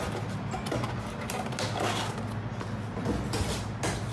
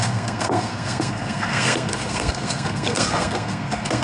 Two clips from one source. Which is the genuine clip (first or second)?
first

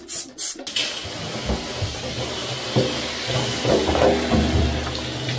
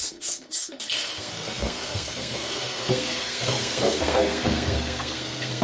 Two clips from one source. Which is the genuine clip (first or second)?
first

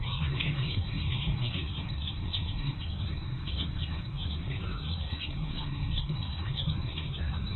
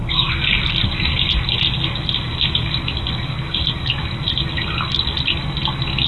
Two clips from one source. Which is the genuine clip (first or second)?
second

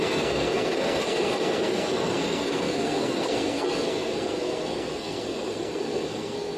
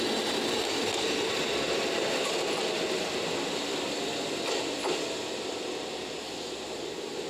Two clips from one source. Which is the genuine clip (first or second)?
second